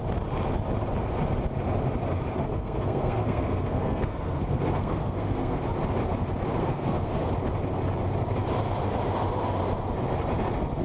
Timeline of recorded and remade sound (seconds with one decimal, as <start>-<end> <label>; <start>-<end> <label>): 0.0-2.4 recorded; 2.4-5.6 remade; 5.6-6.6 recorded; 6.6-7.3 remade; 7.3-10.8 recorded

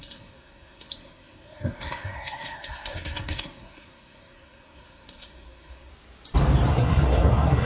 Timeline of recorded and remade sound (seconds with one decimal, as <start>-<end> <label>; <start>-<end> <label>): 0.0-5.9 remade; 5.9-6.7 recorded; 6.7-7.7 remade

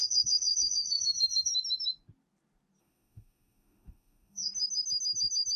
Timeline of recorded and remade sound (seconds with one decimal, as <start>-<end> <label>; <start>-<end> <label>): 0.0-1.5 remade; 1.5-2.8 recorded; 2.8-4.5 remade; 4.5-5.6 recorded

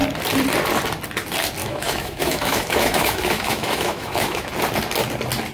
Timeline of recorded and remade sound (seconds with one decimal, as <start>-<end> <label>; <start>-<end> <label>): 0.0-1.6 recorded; 1.6-4.5 remade; 4.5-5.5 recorded

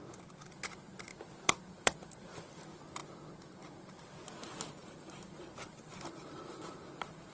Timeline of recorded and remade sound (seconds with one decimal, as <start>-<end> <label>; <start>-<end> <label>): 0.0-1.1 recorded; 1.1-2.5 remade; 2.5-4.8 recorded; 4.8-7.3 remade